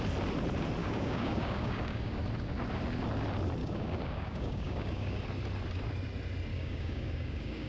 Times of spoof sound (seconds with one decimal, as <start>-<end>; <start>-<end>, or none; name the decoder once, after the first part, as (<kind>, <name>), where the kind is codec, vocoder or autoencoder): 0.8-2.2 (codec, DAC); 3.6-5.2; 6.5-7.7